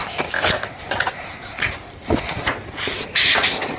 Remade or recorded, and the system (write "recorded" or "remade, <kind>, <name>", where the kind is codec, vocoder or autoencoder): recorded